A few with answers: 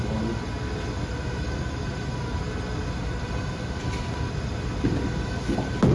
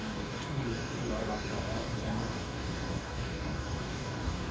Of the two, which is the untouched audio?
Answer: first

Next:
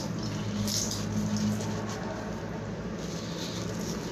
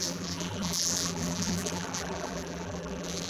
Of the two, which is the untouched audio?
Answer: first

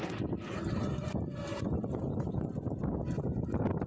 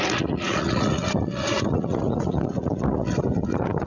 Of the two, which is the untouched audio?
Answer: first